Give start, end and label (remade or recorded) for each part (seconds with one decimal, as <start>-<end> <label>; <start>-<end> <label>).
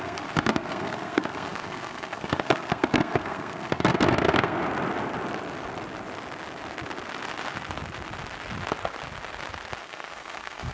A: 0.0-4.6 remade; 4.6-9.8 recorded; 9.8-10.7 remade